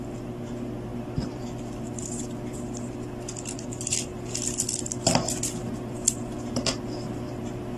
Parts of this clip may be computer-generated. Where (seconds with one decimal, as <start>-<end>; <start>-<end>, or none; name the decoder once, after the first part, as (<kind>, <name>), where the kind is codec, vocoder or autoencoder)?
none